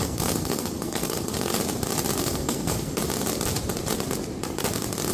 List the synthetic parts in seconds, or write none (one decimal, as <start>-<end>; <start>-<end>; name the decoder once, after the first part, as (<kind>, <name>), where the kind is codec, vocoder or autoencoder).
0.0-1.5 (codec, SNAC); 2.2-3.0

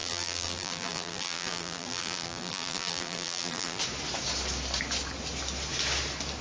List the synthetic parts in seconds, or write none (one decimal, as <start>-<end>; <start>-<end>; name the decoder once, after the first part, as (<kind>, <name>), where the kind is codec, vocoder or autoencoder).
0.0-3.8 (vocoder, BigVGAN v2)

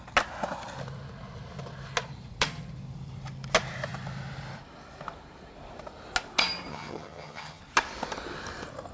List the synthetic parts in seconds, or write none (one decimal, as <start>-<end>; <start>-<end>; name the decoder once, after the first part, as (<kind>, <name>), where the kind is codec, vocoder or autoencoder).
6.7-7.6 (vocoder, HiFi-GAN)

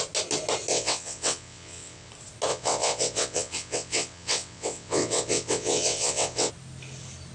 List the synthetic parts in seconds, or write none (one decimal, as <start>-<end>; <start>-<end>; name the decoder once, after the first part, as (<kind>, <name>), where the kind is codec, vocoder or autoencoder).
0.7-2.1 (vocoder, WaveNeXt); 2.5-6.5

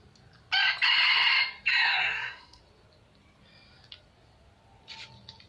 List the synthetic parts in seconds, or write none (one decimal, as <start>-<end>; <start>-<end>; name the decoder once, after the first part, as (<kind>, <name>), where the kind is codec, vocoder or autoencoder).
1.7-2.6 (codec, SNAC)

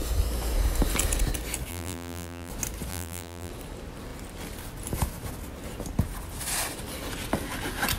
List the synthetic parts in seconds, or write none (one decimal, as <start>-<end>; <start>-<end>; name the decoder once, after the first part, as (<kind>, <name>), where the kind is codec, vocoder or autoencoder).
1.7-2.5 (vocoder, BigVGAN v2); 2.9-3.5